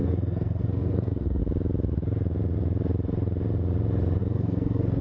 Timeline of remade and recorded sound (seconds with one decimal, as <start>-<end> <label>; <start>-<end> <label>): 0.0-1.4 remade; 1.4-4.2 recorded; 4.2-5.0 remade